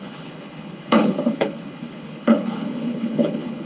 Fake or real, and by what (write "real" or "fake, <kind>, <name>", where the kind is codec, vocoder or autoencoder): fake, codec, HILCodec